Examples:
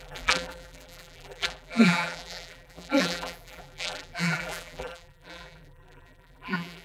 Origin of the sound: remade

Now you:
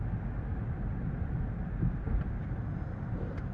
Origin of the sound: recorded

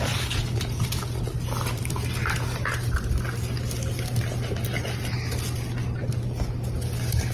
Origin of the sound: recorded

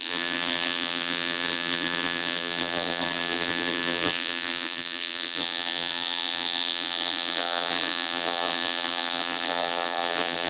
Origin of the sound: remade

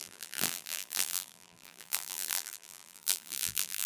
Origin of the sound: remade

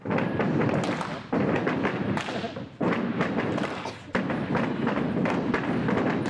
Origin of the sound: recorded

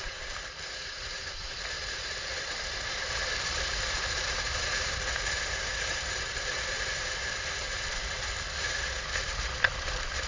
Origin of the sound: remade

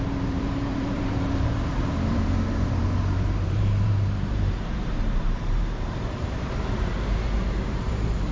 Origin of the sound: remade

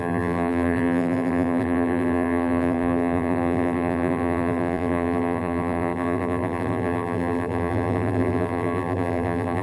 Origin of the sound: remade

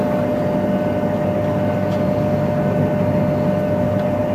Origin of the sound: recorded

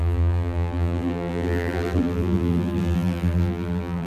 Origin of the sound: remade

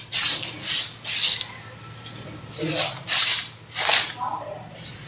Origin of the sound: recorded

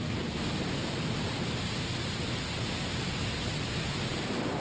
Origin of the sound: remade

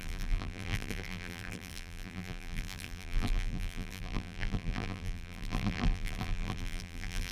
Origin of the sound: remade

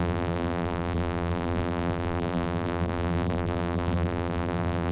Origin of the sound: remade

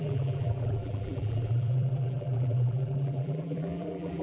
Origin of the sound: remade